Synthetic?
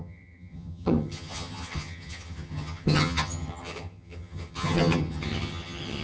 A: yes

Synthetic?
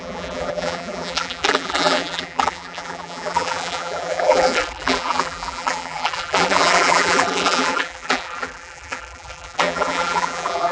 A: yes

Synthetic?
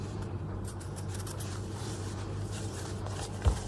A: yes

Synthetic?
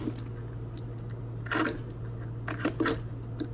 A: no